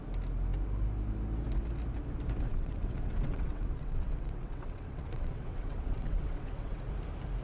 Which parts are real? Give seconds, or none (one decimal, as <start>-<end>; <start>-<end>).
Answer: 0.0-2.5; 6.9-7.4